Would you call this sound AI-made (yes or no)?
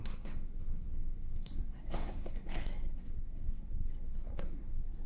yes